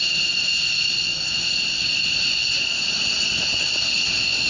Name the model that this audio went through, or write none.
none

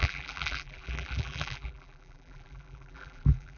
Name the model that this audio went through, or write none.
vocoder, BigVGAN v2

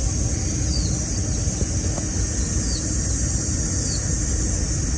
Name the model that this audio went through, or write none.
none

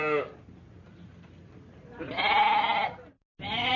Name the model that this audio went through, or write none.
none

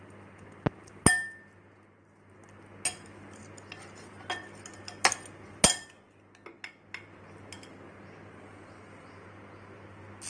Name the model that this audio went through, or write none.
none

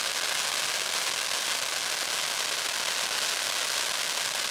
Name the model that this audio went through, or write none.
none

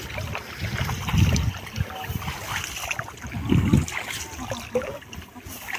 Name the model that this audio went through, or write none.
none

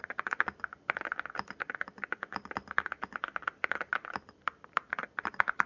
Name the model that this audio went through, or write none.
vocoder, BigVGAN v2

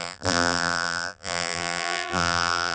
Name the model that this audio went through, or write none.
vocoder, BigVGAN v2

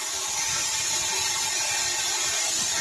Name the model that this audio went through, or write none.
none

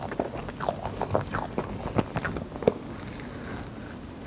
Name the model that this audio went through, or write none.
none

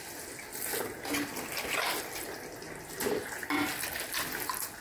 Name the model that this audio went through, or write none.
none